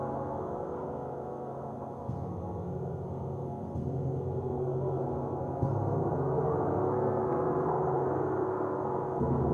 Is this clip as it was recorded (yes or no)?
no